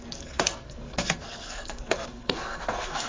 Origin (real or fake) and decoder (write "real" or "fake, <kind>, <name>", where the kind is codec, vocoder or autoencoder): fake, codec, SNAC